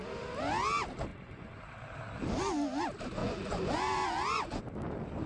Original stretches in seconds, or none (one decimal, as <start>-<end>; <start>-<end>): 0.0-1.1; 1.6-3.2; 4.6-5.3